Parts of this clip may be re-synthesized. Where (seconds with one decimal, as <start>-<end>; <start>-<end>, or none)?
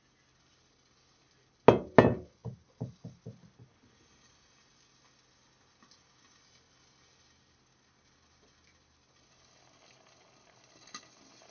none